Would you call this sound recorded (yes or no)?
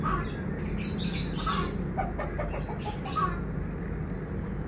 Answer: yes